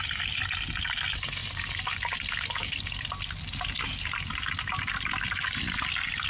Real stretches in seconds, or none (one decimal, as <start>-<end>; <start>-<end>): 0.0-1.4; 2.1-6.3